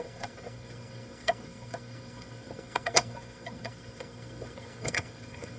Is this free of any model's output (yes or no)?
no